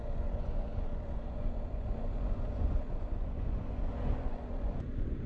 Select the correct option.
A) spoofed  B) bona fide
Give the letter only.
A